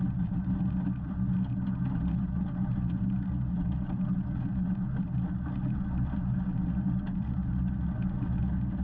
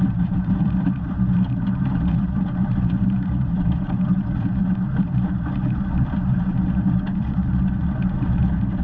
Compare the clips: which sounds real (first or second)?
first